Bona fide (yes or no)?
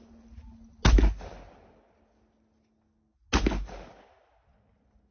yes